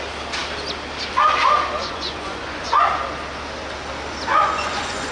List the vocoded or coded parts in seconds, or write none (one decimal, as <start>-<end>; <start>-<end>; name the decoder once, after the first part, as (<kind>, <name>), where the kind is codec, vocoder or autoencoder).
1.8-2.9 (vocoder, Vocos); 4.3-5.1